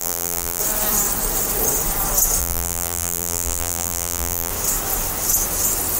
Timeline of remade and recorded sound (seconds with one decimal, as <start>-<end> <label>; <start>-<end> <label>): 0.0-0.6 remade; 0.6-2.4 recorded; 2.4-4.5 remade; 4.5-6.0 recorded